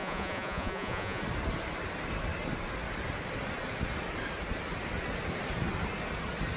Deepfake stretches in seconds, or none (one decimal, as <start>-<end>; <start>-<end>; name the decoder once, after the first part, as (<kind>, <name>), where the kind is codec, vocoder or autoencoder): 0.0-1.2 (vocoder, Vocos)